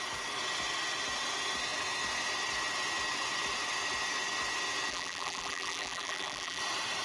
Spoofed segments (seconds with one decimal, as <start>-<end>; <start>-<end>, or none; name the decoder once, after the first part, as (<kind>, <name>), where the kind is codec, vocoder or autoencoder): 4.9-6.6 (vocoder, BigVGAN v2)